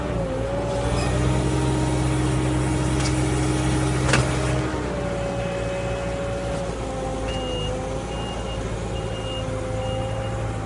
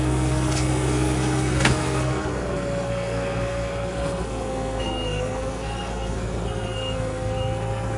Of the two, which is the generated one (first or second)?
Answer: second